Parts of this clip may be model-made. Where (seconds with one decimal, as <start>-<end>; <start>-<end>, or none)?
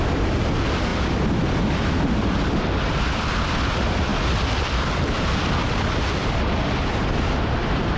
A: 0.0-4.1; 5.0-8.0